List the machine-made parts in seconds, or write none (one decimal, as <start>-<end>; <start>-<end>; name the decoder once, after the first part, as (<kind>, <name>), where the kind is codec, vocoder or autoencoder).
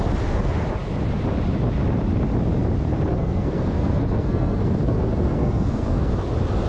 3.1-6.1 (codec, SNAC)